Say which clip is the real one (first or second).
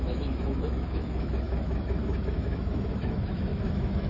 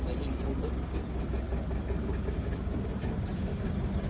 second